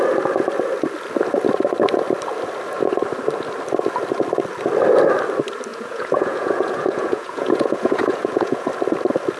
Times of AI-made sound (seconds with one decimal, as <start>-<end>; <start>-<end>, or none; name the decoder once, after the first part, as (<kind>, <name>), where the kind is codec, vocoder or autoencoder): 5.7-8.7 (vocoder, Vocos)